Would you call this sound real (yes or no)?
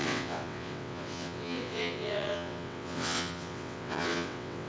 no